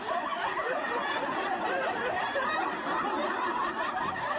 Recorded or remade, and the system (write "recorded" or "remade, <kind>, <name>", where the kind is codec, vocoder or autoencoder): remade, vocoder, BigVGAN v2